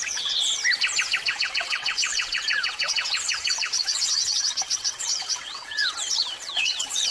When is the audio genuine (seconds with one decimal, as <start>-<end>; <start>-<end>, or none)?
0.6-1.3